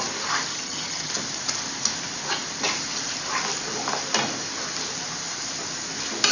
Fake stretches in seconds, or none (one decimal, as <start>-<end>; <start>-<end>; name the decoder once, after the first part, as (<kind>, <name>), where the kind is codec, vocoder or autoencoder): 0.5-1.1 (vocoder, HiFi-GAN)